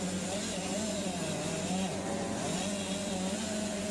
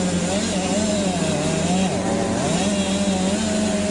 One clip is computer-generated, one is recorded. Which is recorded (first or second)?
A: second